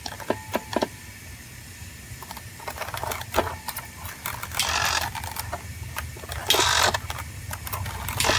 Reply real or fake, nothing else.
real